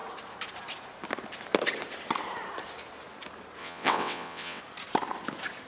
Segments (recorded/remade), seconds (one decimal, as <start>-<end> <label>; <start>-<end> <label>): 0.0-3.6 recorded; 3.6-4.6 remade; 4.6-5.7 recorded